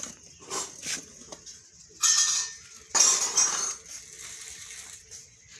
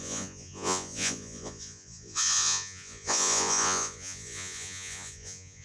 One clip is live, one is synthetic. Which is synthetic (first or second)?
second